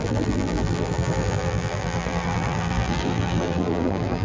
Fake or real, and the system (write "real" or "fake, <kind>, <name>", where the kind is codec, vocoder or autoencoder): fake, vocoder, BigVGAN v2